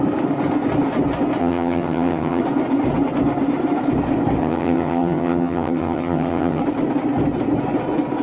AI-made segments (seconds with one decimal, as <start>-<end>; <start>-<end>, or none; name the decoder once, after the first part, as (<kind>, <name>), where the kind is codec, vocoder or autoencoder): 1.4-2.4 (vocoder, HiFi-GAN); 4.4-6.6